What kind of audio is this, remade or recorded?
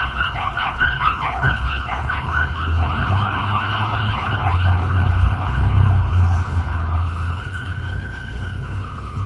remade